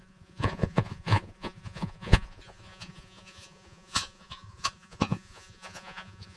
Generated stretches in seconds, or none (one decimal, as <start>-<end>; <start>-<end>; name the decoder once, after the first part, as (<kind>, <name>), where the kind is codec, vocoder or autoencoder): 0.0-6.4 (vocoder, Vocos)